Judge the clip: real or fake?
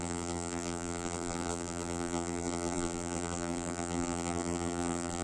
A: fake